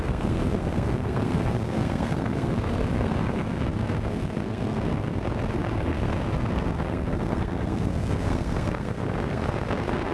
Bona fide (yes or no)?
no